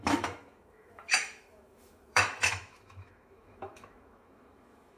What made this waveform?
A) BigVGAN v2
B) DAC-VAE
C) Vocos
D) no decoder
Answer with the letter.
B